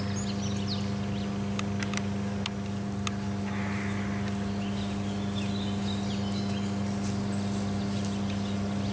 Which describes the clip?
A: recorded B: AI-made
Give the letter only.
A